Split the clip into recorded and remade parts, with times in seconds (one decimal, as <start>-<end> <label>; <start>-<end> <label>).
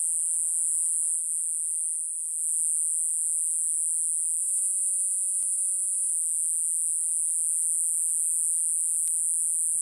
0.0-4.4 recorded; 4.4-6.1 remade; 6.1-9.8 recorded